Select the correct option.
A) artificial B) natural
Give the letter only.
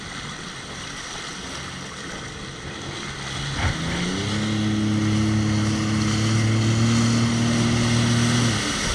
B